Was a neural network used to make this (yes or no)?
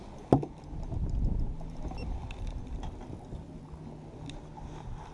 no